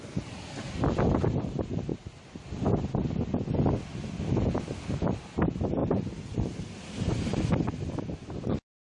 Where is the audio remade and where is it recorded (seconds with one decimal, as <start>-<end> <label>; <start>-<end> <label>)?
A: 0.0-5.8 recorded; 5.8-7.4 remade; 7.4-8.9 recorded